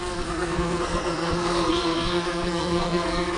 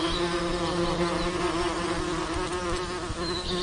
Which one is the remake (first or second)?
first